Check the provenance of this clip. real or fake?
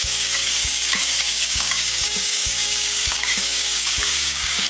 fake